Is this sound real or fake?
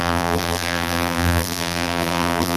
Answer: fake